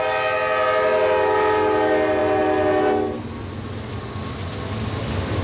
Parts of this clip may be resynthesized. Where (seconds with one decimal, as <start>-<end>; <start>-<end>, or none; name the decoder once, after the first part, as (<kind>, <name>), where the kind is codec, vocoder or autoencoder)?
none